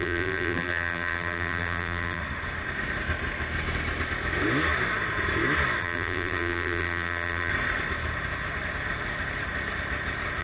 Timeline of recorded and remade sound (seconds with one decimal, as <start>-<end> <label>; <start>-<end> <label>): 0.0-2.2 remade; 2.2-5.8 recorded; 5.8-7.5 remade; 7.5-10.4 recorded